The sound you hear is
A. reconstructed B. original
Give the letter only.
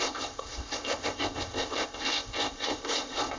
A